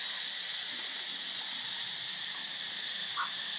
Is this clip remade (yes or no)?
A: no